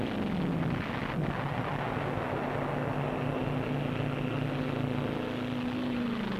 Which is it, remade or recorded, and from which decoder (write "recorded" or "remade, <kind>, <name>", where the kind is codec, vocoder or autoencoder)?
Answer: recorded